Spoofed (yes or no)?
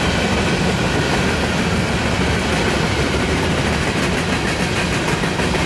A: no